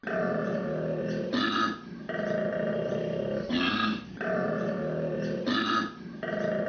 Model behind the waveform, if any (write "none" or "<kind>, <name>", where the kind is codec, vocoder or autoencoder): none